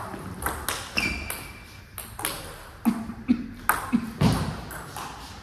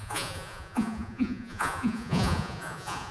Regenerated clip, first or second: second